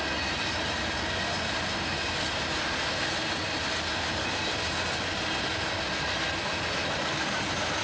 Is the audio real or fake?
real